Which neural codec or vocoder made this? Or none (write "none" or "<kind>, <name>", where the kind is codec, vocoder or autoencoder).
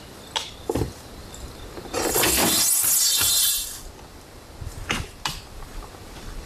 none